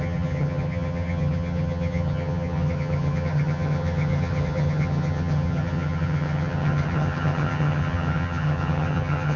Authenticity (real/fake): fake